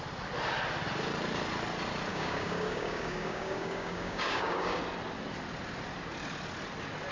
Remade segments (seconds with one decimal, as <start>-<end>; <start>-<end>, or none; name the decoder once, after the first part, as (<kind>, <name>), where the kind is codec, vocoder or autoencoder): 2.1-4.8 (codec, DAC)